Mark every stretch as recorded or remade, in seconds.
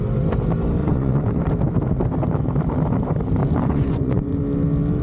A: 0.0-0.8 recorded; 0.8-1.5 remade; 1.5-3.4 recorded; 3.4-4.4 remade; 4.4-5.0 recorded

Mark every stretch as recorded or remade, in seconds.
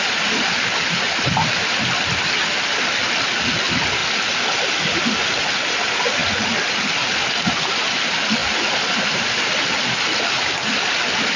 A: 0.0-8.4 recorded; 8.4-9.7 remade; 9.7-11.4 recorded